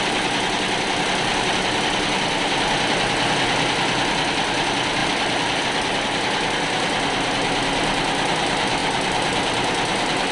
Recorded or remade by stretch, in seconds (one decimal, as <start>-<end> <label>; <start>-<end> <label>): 0.0-5.0 recorded; 5.0-5.6 remade; 5.6-10.3 recorded